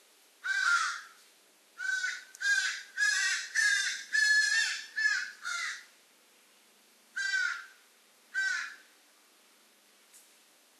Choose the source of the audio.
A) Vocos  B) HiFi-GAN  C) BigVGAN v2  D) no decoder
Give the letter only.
C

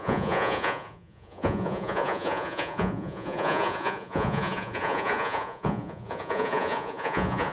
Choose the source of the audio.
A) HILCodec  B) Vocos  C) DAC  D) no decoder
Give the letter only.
B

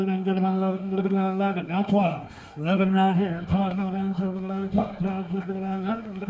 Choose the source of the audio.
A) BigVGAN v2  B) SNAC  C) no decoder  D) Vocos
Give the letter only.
B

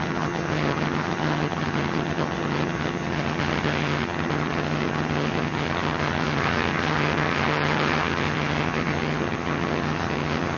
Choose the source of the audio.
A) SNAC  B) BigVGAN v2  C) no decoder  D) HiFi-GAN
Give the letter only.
D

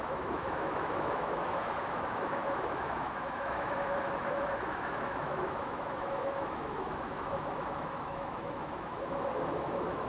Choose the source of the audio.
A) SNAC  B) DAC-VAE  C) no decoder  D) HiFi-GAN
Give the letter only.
B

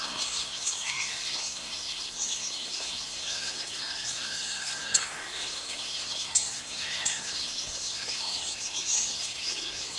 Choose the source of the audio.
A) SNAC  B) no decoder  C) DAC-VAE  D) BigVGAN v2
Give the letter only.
A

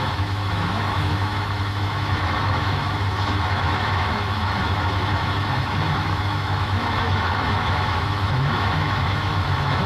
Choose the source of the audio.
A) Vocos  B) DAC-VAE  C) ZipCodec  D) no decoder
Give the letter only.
B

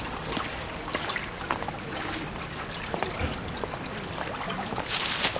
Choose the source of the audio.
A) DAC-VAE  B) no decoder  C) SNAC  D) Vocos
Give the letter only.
B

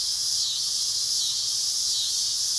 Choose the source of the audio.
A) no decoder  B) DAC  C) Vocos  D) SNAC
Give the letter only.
A